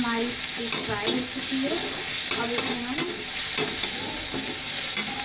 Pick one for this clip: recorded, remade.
recorded